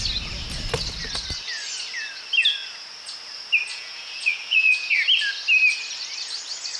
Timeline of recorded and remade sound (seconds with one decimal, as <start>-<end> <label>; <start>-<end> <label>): 0.0-3.7 recorded; 3.7-5.0 remade; 5.0-6.8 recorded